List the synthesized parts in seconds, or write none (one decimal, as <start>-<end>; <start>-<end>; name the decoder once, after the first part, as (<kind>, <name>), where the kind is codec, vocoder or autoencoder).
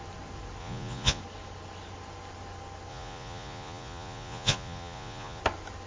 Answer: 0.6-1.2 (vocoder, Vocos); 2.9-5.4